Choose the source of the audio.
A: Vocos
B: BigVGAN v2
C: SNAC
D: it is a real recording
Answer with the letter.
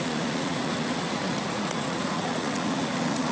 A